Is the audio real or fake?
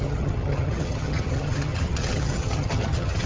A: fake